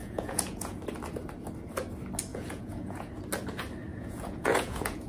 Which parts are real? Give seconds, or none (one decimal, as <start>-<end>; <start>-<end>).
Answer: 0.8-2.3; 3.1-3.9